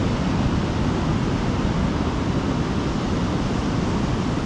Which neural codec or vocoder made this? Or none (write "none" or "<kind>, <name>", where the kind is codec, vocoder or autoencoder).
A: none